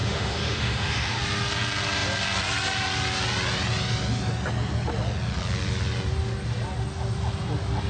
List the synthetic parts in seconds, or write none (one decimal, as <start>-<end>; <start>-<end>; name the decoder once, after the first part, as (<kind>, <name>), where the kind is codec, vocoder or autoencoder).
0.0-1.2 (autoencoder, DAC-VAE)